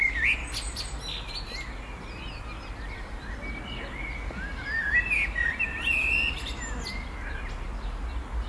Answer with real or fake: real